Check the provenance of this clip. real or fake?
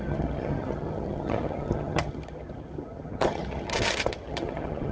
fake